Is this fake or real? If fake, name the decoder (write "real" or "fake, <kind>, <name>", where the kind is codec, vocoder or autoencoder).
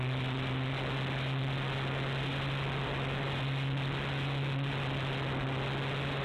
real